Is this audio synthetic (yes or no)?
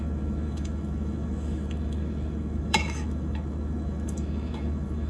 yes